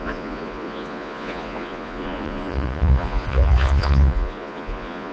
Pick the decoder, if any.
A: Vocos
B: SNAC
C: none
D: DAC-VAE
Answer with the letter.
A